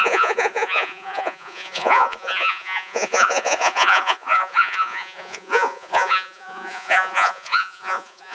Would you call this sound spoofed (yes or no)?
yes